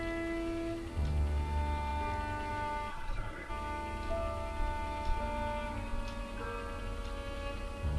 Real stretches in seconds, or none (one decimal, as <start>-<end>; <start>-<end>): 0.0-2.9; 3.5-8.0